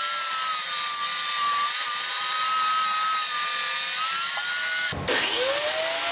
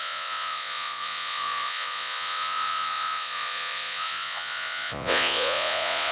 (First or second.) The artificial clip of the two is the second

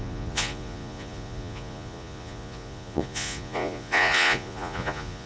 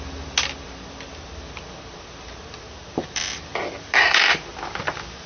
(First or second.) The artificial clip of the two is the first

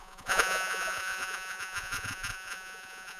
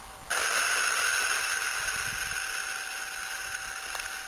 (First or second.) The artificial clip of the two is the first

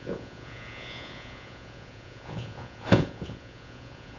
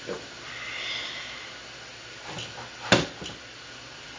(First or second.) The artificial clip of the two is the first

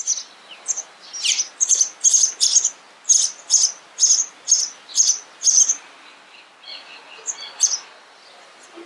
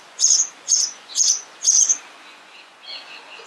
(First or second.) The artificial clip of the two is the second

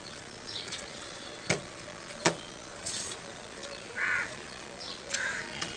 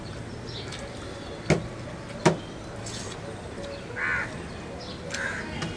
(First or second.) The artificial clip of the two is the first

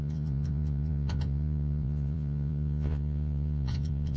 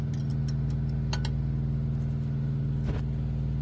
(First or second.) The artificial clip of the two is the first